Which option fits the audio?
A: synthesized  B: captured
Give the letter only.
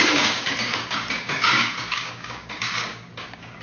A